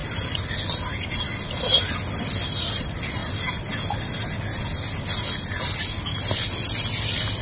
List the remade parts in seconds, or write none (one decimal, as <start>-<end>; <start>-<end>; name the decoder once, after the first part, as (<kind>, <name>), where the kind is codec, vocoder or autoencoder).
none

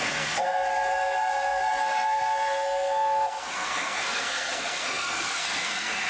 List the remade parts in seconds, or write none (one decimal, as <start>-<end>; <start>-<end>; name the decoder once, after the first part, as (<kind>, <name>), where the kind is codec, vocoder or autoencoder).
0.0-6.1 (codec, SNAC)

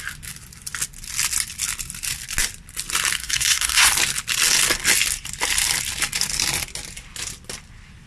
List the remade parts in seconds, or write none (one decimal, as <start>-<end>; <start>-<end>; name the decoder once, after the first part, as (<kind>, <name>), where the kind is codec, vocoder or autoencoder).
3.2-3.9 (codec, SNAC)

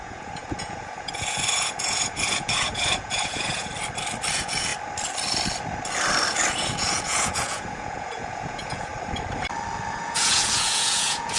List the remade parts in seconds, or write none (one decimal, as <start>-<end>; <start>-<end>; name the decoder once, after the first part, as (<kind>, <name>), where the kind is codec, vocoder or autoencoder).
0.0-3.7 (vocoder, Vocos); 4.3-4.7; 6.5-8.9; 9.9-11.4